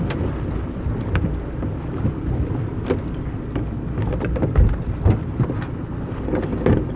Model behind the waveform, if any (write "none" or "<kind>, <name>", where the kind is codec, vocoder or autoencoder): none